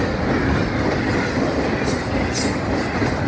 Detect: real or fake real